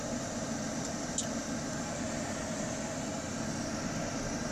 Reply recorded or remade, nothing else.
recorded